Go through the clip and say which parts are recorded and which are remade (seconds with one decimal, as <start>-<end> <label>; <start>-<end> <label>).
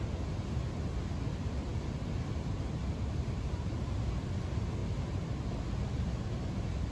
0.0-6.9 recorded